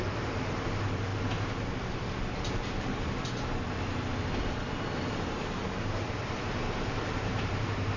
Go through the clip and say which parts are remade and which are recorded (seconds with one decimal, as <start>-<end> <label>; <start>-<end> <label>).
0.0-1.1 remade; 1.1-5.1 recorded; 5.1-8.0 remade